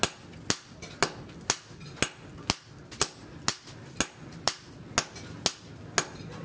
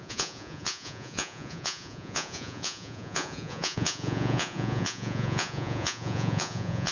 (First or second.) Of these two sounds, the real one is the first